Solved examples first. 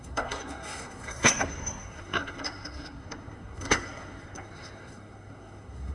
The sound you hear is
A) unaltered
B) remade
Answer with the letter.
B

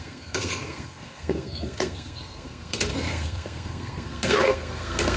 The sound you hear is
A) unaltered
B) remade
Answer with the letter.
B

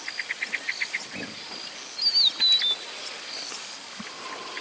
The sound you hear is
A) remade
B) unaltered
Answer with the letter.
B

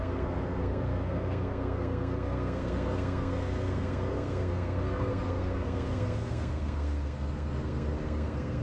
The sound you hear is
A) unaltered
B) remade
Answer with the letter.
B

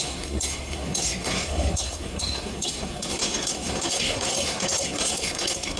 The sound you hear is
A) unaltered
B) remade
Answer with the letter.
B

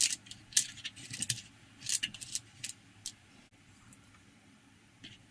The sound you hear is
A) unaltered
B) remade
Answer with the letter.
A